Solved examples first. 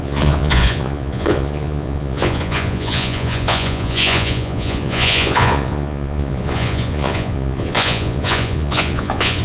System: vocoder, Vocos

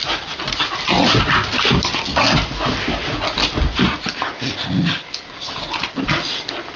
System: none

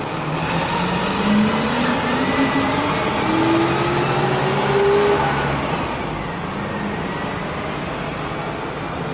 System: none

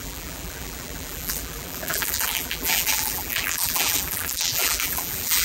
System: vocoder, BigVGAN v2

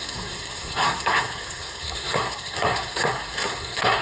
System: codec, SNAC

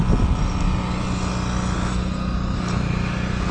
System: none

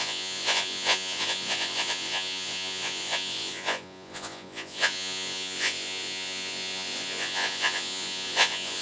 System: vocoder, Vocos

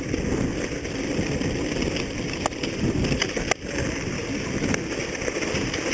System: none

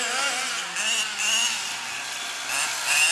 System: none